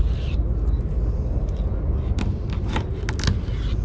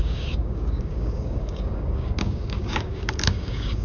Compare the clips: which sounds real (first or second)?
first